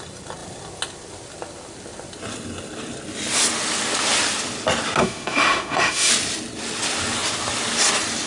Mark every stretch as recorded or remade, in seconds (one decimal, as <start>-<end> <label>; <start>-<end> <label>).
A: 0.0-5.0 recorded; 5.0-6.1 remade; 6.1-8.3 recorded